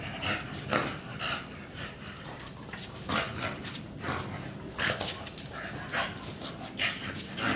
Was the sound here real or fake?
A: real